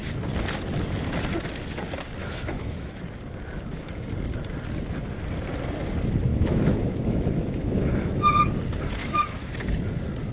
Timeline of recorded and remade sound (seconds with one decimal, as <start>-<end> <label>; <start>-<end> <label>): 0.0-2.2 recorded; 2.2-3.0 remade; 3.0-6.3 recorded; 6.3-8.3 remade; 8.3-9.0 recorded; 9.0-9.5 remade; 9.5-10.3 recorded